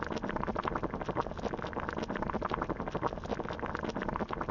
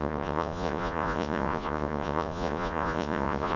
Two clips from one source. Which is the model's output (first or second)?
second